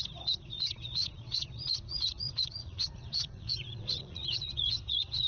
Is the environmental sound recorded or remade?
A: remade